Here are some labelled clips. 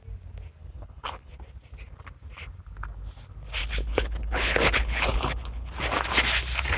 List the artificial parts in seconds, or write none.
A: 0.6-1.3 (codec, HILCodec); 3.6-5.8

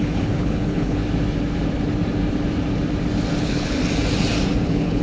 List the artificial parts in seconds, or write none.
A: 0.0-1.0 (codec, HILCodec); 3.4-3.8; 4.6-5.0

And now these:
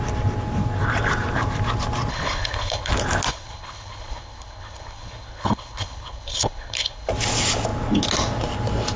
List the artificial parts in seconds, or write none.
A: 2.1-2.9 (codec, HILCodec); 3.3-7.1